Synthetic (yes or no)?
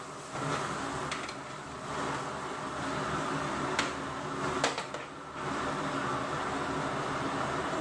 no